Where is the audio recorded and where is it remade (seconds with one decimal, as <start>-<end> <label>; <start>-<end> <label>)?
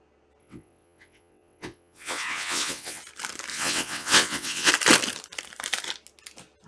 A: 0.0-0.4 recorded; 0.4-3.0 remade; 3.0-3.5 recorded; 3.5-4.7 remade; 4.7-6.7 recorded